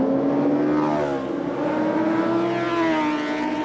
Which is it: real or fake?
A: real